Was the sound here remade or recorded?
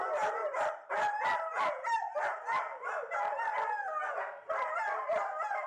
recorded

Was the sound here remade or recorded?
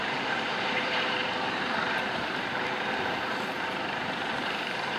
remade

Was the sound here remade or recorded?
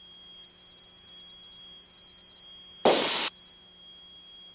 recorded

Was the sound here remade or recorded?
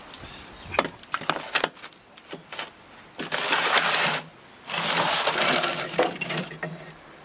recorded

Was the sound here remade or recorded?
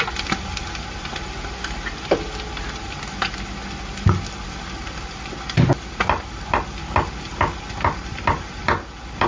recorded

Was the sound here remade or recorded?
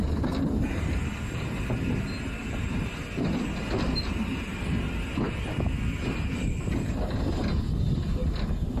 recorded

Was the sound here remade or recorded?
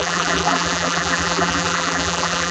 remade